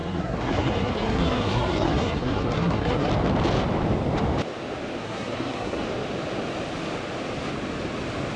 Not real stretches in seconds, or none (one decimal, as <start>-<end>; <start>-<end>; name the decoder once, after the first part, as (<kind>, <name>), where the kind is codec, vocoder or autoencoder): 0.0-3.1 (codec, SNAC); 5.0-5.8